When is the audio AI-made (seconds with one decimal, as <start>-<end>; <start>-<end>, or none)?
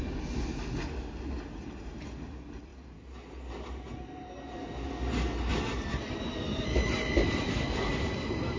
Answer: none